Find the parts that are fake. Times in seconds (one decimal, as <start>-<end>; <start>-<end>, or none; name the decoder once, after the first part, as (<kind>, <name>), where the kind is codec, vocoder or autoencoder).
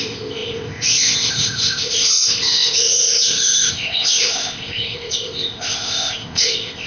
0.0-6.9 (codec, ZipCodec)